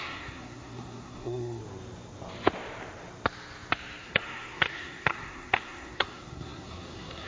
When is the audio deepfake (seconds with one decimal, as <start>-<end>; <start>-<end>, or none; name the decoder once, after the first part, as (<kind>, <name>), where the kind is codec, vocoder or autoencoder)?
0.0-1.6 (codec, SNAC); 4.0-7.3